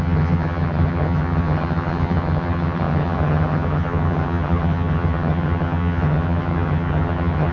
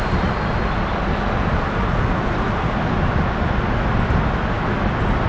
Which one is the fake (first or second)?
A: first